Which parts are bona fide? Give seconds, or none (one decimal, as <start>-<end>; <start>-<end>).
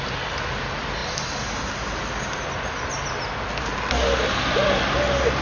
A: 0.0-5.4